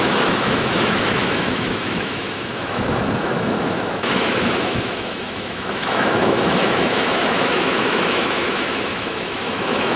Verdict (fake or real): fake